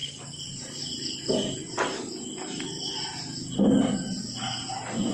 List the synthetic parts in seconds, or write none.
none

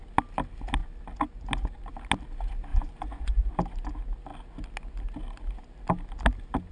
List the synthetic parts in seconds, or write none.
2.7-3.5 (vocoder, Vocos)